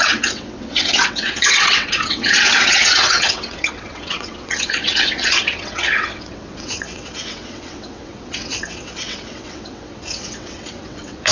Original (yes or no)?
no